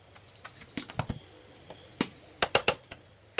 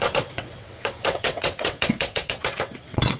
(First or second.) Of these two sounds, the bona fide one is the first